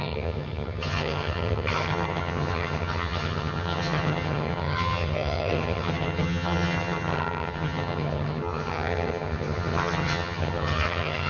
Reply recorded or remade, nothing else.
remade